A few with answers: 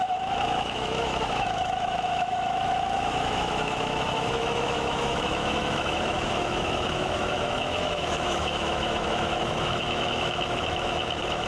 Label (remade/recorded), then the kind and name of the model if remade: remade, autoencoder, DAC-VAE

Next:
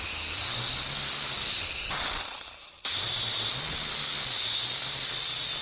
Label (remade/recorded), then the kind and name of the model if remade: recorded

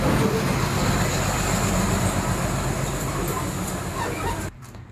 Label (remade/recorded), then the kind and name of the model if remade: recorded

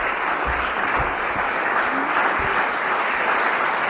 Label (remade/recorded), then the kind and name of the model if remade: recorded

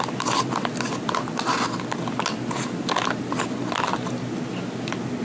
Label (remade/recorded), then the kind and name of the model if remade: recorded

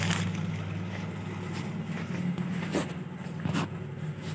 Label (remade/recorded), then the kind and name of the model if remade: recorded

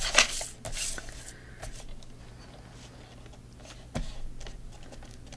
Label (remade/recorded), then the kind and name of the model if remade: recorded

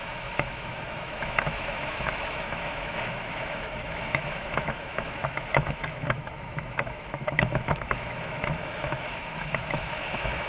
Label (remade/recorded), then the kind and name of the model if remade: remade, autoencoder, DAC-VAE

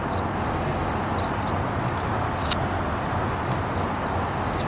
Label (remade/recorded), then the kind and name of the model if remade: recorded